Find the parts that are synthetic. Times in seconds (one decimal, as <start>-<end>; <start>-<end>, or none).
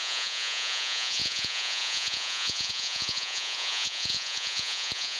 0.0-5.2